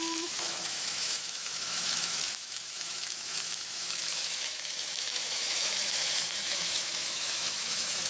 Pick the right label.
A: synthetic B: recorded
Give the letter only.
A